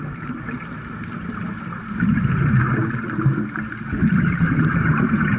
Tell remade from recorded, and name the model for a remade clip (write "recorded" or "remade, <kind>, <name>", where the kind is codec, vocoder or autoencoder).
recorded